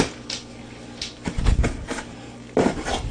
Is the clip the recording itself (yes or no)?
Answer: yes